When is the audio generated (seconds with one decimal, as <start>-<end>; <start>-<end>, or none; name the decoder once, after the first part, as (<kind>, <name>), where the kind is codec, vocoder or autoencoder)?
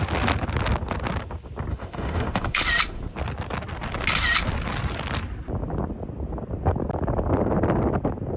1.7-2.6 (autoencoder, DAC-VAE)